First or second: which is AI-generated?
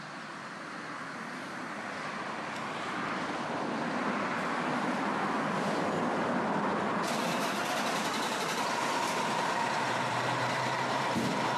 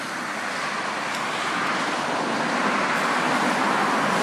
first